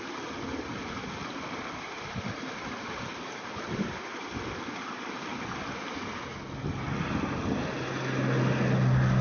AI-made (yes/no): no